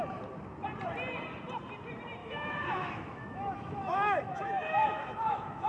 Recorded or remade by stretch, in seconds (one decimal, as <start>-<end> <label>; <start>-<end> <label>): 0.0-2.2 recorded; 2.2-5.7 remade